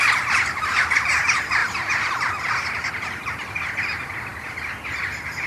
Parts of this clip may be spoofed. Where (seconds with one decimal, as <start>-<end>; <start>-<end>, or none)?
none